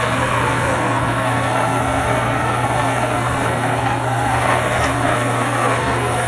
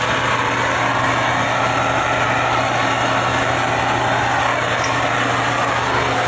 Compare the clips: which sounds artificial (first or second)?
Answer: first